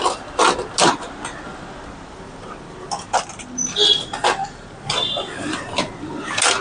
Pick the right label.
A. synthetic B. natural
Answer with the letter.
B